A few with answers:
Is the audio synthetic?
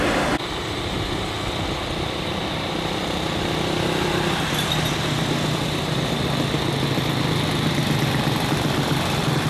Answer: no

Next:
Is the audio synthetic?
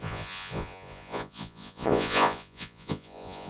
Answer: yes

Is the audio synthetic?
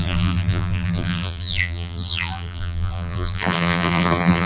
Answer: yes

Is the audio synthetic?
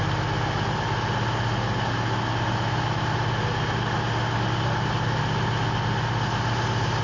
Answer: no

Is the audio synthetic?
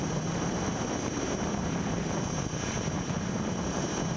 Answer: yes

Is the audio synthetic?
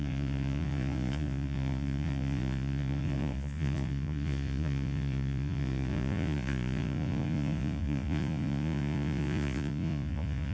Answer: yes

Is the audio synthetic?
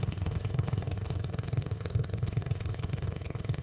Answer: yes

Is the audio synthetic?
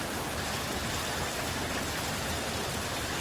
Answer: no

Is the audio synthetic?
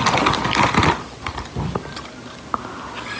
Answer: no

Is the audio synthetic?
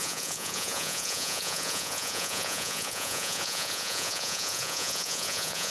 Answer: yes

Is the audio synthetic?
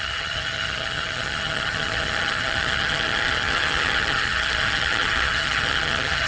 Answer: yes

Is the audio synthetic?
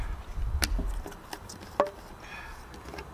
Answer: no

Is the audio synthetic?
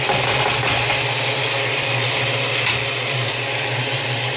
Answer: no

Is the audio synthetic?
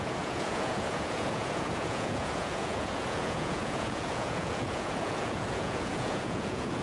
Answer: yes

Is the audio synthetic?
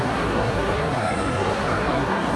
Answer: yes